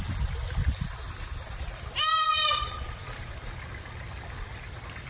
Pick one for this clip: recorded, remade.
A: remade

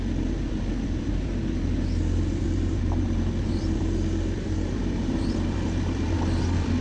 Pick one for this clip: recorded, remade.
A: remade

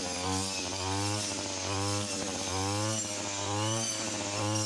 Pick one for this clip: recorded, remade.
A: recorded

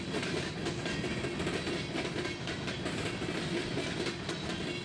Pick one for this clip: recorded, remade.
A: recorded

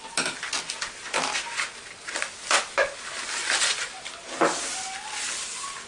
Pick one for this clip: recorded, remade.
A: recorded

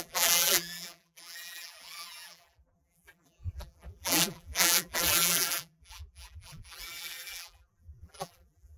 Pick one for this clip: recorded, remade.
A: remade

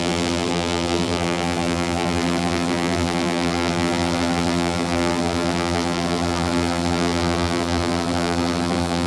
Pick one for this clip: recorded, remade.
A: remade